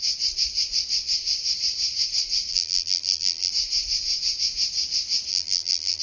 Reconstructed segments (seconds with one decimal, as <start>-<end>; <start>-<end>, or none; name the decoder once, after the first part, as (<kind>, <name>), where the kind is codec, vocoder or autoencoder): 2.5-3.5 (vocoder, BigVGAN v2); 5.3-6.0